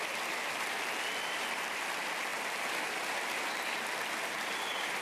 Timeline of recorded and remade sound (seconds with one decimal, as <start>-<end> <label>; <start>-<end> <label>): 0.0-5.0 recorded